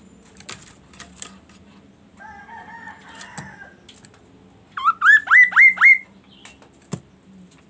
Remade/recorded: recorded